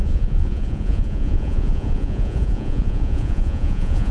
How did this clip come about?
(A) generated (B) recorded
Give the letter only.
A